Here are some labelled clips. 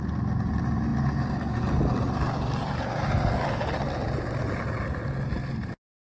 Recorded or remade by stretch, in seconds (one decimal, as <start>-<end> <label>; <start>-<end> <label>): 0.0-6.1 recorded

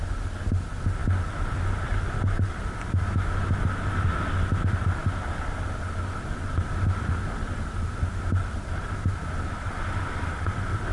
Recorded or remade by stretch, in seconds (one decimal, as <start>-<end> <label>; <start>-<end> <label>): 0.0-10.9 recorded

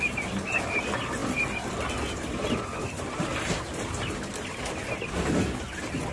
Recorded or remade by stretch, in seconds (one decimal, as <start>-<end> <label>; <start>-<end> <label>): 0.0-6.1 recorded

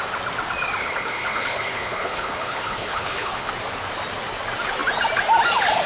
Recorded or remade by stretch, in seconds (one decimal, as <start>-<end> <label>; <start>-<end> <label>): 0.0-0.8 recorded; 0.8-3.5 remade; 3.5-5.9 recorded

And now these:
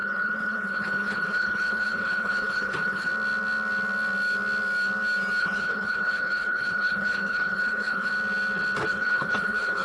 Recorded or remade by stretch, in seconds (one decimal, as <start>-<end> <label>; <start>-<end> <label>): 0.0-3.1 remade; 3.1-5.4 recorded; 5.4-8.1 remade; 8.1-8.9 recorded; 8.9-9.8 remade